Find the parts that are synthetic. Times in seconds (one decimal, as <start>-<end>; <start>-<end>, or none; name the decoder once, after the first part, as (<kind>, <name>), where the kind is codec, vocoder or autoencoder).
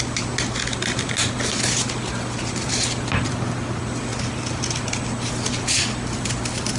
none